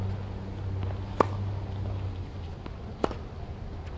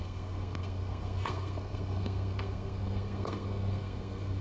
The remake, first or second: second